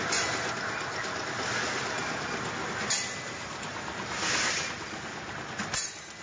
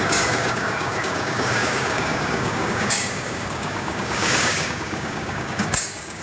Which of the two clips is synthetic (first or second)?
second